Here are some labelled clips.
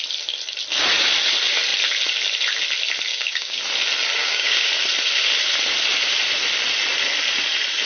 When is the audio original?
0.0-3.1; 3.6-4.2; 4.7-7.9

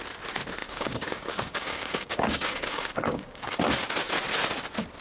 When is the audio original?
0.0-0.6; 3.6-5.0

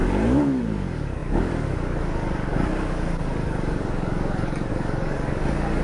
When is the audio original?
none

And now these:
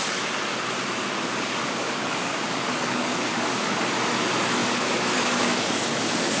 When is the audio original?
0.0-1.0; 3.8-4.6

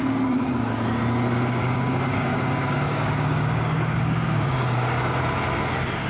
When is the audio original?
0.0-1.6; 5.2-6.1